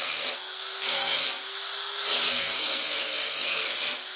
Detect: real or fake fake